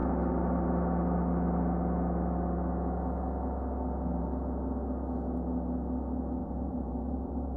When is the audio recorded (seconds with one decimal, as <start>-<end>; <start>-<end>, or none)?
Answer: 0.0-6.4